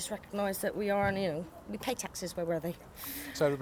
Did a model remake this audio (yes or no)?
no